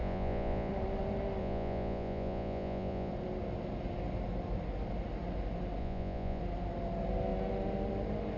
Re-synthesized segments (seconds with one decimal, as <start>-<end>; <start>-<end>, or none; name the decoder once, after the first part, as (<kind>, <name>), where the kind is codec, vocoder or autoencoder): 0.0-0.7 (vocoder, Vocos); 1.4-3.1; 5.8-6.4